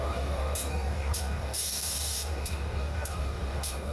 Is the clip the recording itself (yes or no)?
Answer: no